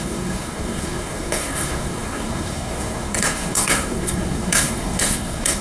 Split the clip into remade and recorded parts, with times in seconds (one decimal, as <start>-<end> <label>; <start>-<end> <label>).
0.0-5.6 remade